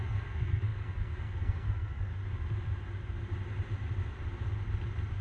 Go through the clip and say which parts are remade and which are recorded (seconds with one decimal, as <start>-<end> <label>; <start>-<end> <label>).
0.0-2.1 remade; 2.1-5.2 recorded